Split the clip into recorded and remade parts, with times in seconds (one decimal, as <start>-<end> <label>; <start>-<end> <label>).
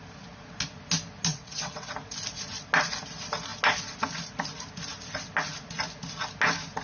0.0-1.3 recorded; 1.3-1.9 remade; 1.9-6.8 recorded